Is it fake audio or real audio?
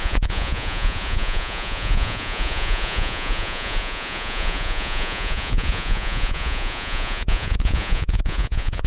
fake